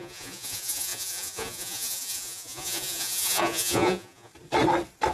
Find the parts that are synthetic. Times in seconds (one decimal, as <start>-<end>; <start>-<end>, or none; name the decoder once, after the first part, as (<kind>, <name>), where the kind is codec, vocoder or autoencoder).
0.0-4.3 (vocoder, Vocos)

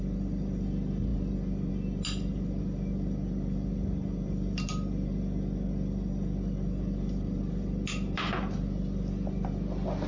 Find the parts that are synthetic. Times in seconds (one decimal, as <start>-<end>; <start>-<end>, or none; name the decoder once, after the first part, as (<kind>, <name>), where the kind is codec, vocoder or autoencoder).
none

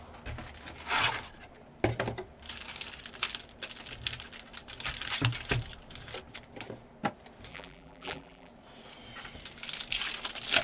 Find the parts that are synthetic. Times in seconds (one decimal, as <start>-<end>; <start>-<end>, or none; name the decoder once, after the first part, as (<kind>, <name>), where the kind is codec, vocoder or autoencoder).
7.5-8.5 (vocoder, BigVGAN v2)